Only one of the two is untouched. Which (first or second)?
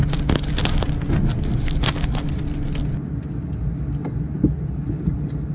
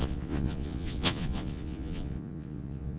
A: first